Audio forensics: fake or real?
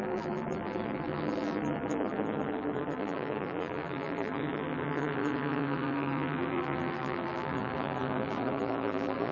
fake